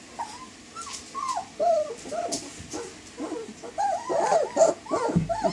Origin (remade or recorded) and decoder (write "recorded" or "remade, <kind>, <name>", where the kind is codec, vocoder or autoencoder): recorded